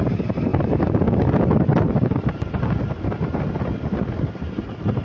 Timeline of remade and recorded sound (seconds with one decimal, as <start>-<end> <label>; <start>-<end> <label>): 0.0-5.0 recorded